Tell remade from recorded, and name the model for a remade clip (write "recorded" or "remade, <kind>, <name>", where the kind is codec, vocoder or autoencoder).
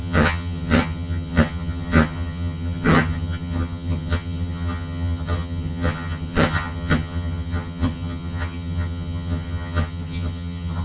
remade, vocoder, HiFi-GAN